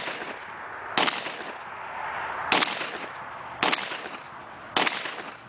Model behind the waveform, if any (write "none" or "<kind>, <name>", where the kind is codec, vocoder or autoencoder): none